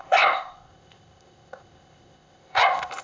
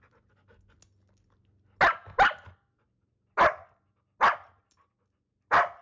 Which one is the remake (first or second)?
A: first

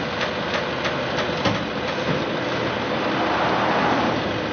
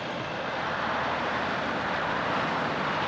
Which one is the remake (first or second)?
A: second